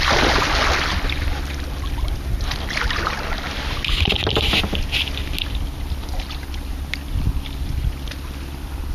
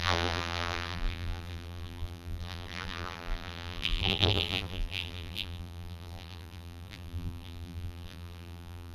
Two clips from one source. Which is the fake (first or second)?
second